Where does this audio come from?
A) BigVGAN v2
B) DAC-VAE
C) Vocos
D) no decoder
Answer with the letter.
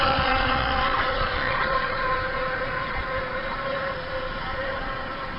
C